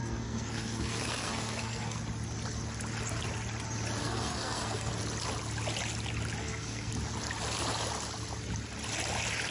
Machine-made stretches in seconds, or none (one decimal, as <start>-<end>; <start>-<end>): 0.0-2.0; 4.0-4.9; 6.4-6.9